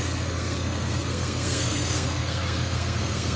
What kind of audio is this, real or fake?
fake